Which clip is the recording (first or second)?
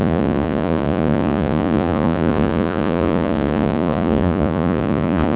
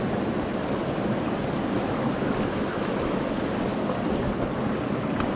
second